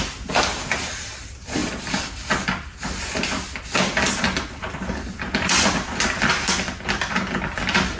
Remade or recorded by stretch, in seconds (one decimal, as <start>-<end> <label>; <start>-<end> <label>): 0.0-8.0 recorded